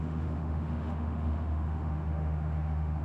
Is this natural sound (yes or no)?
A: no